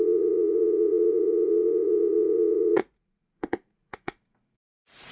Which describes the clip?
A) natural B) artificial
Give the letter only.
B